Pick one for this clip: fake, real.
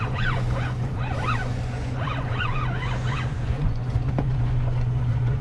fake